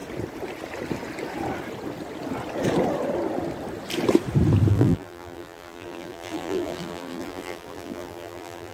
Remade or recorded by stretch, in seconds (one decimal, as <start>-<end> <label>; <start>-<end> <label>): 0.0-4.7 recorded; 4.7-8.7 remade